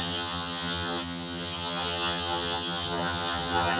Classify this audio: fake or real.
fake